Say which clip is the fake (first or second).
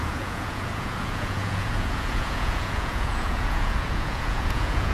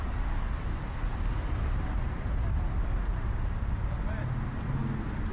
first